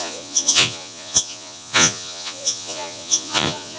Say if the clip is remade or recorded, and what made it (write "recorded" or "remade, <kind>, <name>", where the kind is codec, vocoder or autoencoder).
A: remade, vocoder, Vocos